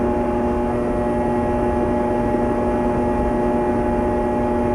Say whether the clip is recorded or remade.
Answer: recorded